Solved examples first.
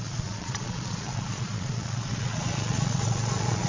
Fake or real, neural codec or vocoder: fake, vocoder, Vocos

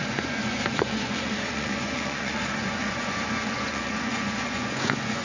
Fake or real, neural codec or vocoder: fake, vocoder, Vocos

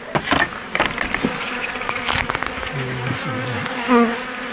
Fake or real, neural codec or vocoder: real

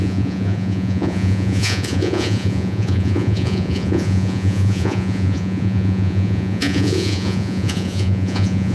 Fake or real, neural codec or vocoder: fake, vocoder, Vocos